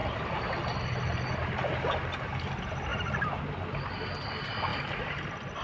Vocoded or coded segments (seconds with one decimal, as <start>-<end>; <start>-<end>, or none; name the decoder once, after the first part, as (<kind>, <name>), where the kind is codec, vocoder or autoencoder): 2.9-3.5 (vocoder, BigVGAN v2)